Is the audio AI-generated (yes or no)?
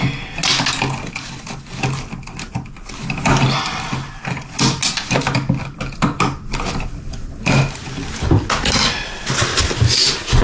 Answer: no